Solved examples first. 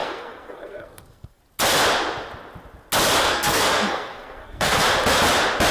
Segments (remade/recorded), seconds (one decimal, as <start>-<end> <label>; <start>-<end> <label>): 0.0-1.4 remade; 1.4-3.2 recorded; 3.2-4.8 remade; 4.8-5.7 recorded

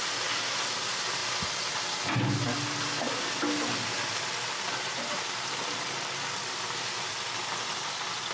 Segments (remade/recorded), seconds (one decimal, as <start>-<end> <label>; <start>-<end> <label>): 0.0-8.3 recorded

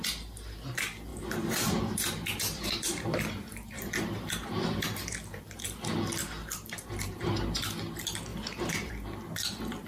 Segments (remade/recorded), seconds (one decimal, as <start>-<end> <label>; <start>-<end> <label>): 0.0-1.1 recorded; 1.1-5.8 remade; 5.8-6.4 recorded; 6.4-7.2 remade; 7.2-8.3 recorded; 8.3-8.9 remade; 8.9-9.9 recorded

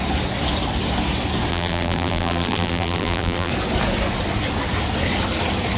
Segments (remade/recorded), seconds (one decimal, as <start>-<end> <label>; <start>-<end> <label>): 0.0-1.5 recorded; 1.5-3.5 remade; 3.5-5.8 recorded

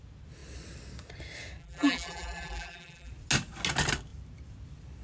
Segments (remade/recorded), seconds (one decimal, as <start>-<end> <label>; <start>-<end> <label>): 0.0-1.6 recorded; 1.6-3.1 remade; 3.1-5.0 recorded

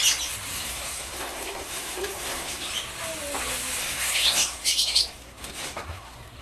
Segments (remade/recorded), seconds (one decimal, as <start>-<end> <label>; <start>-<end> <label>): 0.0-0.5 recorded; 0.5-2.7 remade; 2.7-3.8 recorded; 3.8-6.4 remade